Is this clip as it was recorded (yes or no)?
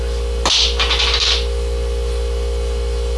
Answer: yes